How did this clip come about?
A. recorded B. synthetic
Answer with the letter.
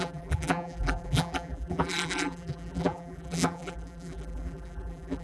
B